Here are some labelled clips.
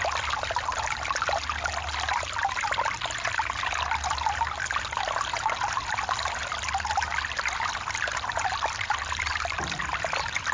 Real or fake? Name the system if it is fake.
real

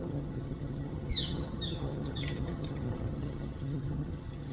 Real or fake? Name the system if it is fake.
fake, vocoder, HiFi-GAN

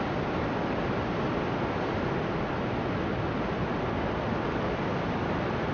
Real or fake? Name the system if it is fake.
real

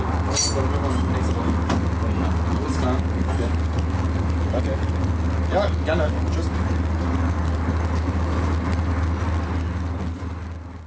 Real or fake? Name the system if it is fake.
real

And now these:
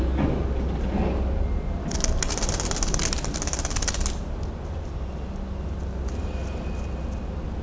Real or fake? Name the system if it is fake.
real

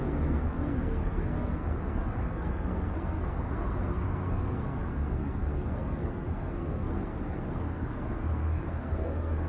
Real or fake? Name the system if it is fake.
fake, codec, SNAC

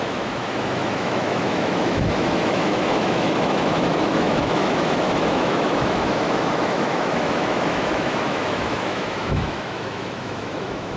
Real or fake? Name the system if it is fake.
fake, autoencoder, DAC-VAE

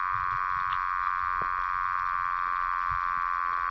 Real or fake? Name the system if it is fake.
real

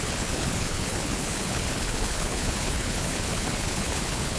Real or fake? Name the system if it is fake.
fake, codec, HILCodec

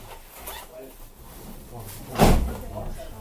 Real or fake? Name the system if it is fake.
real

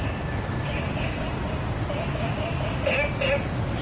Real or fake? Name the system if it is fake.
real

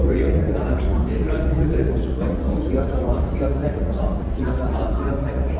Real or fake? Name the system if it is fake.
fake, vocoder, Vocos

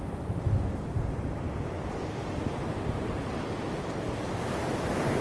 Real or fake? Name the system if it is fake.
real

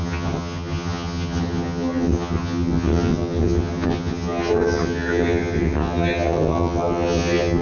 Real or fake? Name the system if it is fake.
fake, vocoder, HiFi-GAN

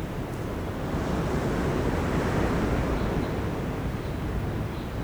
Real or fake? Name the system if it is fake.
real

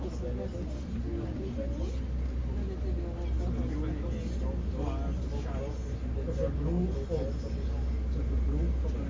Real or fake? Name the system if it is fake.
real